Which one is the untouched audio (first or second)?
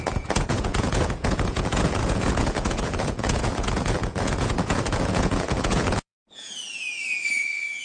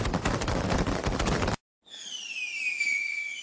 second